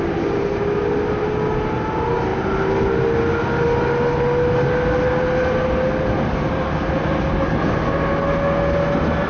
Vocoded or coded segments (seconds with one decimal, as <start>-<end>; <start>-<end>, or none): none